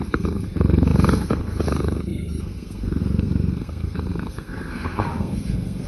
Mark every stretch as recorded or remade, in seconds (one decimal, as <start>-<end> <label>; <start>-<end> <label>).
0.0-5.9 remade